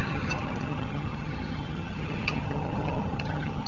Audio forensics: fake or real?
fake